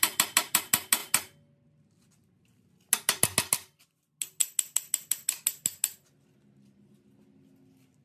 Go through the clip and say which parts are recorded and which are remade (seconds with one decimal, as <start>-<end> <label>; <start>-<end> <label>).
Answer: 0.0-8.0 recorded

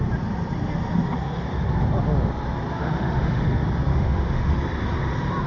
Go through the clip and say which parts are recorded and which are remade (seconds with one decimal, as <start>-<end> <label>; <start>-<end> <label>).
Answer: 0.0-2.8 recorded; 2.8-3.4 remade; 3.4-3.9 recorded; 3.9-4.5 remade; 4.5-5.5 recorded

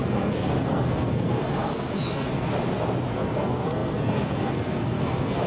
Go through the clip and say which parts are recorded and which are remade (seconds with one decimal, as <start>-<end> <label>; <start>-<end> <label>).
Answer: 0.0-2.5 remade; 2.5-3.1 recorded; 3.1-5.5 remade